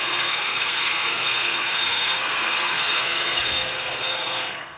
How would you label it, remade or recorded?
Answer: remade